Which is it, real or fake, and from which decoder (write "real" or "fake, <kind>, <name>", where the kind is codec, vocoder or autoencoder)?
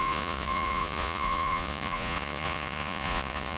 fake, vocoder, Vocos